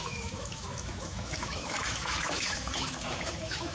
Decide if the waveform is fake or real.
fake